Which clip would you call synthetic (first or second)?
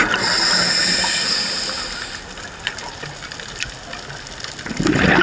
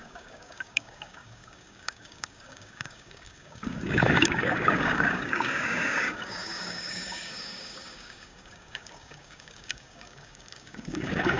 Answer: second